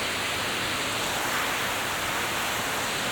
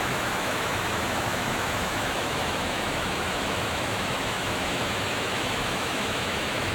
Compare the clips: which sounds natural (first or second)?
first